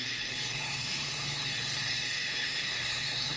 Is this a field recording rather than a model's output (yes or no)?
no